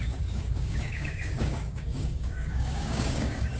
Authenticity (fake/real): fake